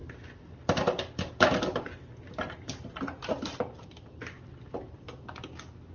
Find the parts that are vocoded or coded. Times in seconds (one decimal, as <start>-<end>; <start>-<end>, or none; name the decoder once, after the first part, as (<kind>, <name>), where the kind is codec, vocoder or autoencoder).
3.3-5.1 (vocoder, BigVGAN v2)

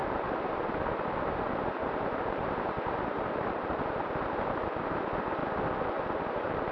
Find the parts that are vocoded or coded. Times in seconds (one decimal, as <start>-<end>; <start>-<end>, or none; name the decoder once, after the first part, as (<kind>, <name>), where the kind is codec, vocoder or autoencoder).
0.0-5.4 (vocoder, BigVGAN v2); 6.0-6.7

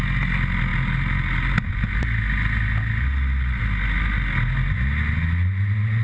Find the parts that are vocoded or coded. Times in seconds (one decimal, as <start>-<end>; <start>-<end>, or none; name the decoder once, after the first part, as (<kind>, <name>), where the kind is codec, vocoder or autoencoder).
none

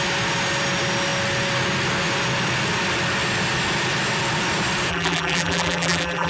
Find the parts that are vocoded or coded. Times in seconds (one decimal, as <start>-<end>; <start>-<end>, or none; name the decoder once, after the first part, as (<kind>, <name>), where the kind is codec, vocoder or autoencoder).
4.9-6.3 (vocoder, BigVGAN v2)

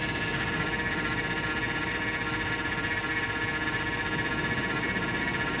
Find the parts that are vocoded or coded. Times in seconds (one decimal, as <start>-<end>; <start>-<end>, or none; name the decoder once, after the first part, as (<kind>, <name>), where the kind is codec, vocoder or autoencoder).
0.0-5.6 (vocoder, BigVGAN v2)

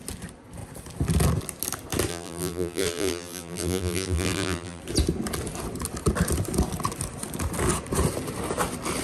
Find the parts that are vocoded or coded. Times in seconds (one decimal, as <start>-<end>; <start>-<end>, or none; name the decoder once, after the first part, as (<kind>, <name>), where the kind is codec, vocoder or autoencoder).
2.1-4.8 (vocoder, BigVGAN v2)

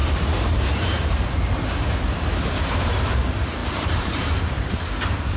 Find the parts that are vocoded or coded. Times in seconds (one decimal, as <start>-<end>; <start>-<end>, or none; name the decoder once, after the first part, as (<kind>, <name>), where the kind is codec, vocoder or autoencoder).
0.0-5.4 (vocoder, BigVGAN v2)

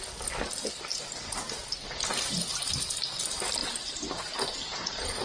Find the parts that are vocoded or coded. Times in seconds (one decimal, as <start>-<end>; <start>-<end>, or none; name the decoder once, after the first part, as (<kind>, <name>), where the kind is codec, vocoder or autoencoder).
0.9-1.5 (vocoder, BigVGAN v2); 3.6-5.2